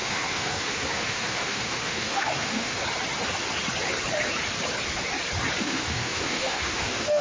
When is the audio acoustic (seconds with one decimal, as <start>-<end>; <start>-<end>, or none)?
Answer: 2.8-5.6